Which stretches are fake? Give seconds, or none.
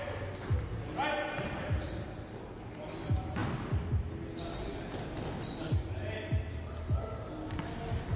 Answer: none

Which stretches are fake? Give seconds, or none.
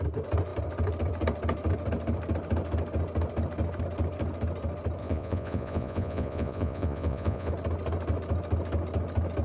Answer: 5.0-7.5 (vocoder, Vocos)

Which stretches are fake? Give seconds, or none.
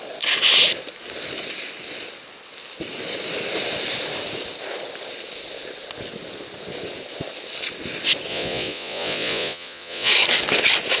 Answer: 8.3-10.1 (vocoder, Vocos)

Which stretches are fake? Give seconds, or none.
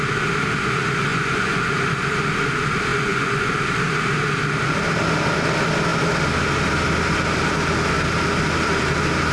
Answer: 1.1-1.7 (vocoder, Vocos); 2.9-3.6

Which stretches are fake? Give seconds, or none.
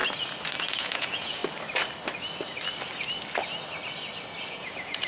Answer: 0.6-1.4 (vocoder, Vocos); 4.5-5.1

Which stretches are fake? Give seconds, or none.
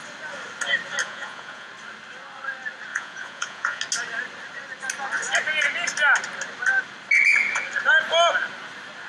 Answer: 1.0-1.7 (vocoder, Vocos); 2.9-3.8